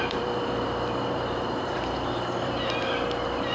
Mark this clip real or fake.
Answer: fake